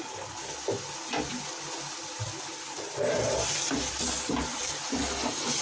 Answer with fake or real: real